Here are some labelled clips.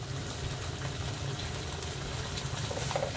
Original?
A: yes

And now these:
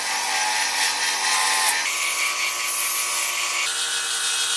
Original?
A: yes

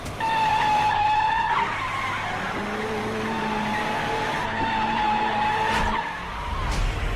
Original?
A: yes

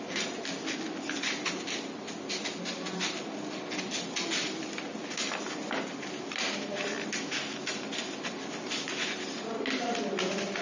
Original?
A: yes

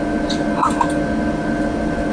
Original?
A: yes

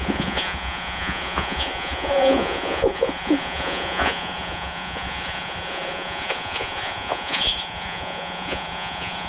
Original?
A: no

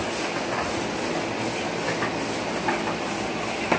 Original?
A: yes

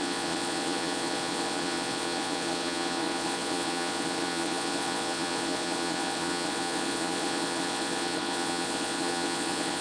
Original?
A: no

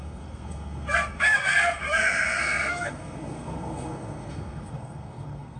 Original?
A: no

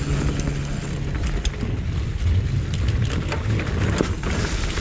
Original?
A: yes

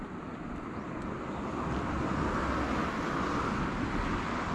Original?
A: yes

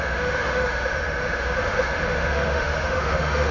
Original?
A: no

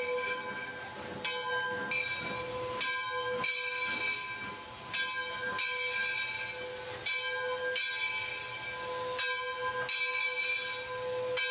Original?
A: yes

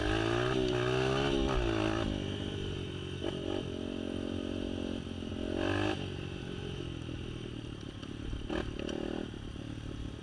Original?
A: yes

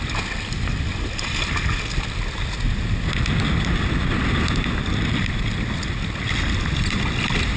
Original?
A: yes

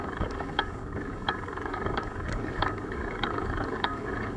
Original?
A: no